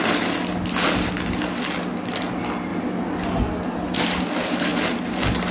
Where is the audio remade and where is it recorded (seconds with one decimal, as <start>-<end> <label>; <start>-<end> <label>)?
0.0-5.5 recorded